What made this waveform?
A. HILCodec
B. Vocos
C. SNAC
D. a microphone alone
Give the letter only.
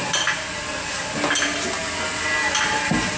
D